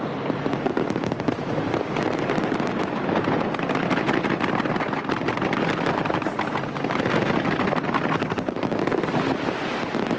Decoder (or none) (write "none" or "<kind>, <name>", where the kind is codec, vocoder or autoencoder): none